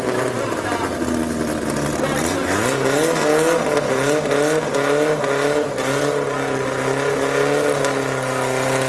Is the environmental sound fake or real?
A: real